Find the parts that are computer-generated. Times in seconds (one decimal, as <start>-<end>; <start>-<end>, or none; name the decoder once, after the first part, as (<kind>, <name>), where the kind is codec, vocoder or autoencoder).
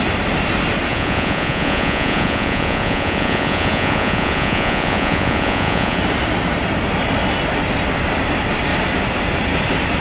0.9-6.0 (vocoder, Vocos)